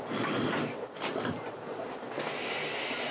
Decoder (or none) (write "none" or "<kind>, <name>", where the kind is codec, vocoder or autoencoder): none